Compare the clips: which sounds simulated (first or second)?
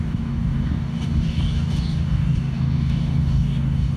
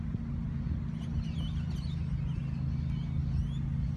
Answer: first